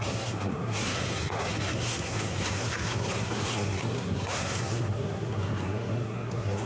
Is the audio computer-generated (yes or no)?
yes